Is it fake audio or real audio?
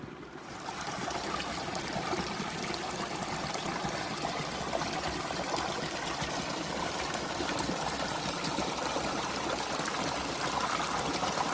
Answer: real